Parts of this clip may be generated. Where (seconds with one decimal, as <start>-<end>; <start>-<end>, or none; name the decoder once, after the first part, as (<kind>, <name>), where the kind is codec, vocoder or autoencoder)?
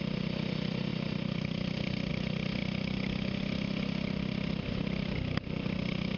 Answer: 0.9-2.1 (vocoder, BigVGAN v2)